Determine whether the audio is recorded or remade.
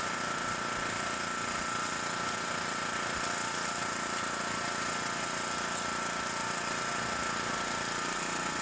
recorded